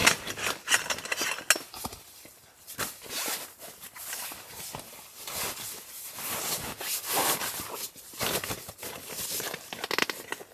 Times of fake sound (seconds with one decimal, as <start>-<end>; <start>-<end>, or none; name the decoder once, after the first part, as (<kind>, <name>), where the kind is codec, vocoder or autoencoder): none